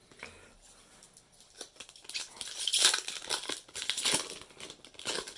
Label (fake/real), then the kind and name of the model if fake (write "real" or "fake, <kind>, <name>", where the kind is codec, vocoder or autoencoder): real